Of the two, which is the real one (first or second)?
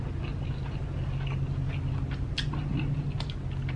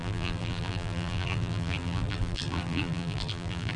first